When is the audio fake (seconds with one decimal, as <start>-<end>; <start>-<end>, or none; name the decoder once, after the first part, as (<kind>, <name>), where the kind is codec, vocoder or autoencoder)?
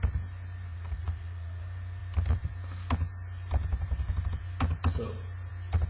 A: 0.7-1.6 (vocoder, Vocos)